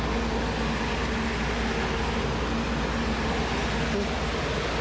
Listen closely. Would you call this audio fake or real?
real